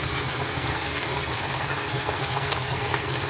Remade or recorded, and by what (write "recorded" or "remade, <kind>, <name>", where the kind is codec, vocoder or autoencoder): remade, codec, SNAC